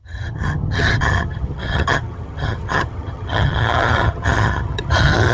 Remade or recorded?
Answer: remade